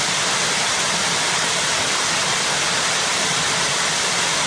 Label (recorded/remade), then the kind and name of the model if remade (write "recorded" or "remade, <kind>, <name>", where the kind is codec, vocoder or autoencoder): recorded